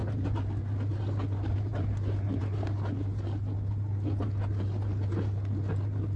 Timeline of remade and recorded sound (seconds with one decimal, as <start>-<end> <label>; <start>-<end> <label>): 0.0-6.2 recorded